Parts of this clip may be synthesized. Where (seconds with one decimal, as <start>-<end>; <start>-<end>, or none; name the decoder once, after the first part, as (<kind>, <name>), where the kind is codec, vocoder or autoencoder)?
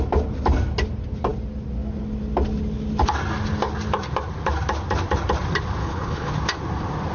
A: 5.8-6.3 (codec, HILCodec)